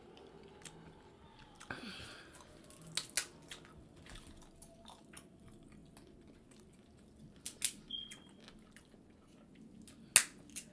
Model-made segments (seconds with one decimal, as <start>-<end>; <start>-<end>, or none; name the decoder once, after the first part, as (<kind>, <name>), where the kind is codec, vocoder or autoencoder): none

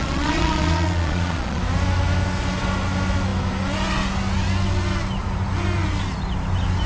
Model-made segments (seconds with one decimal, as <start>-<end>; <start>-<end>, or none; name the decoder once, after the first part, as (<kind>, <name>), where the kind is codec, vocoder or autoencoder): 0.0-1.6 (vocoder, Vocos)

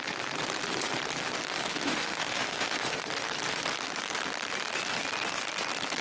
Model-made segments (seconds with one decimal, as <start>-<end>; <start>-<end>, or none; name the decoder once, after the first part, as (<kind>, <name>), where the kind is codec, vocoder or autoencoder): 1.6-3.0 (autoencoder, DAC-VAE)